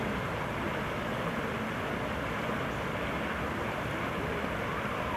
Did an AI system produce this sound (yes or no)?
no